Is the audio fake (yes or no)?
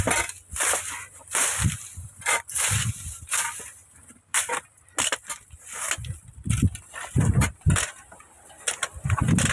no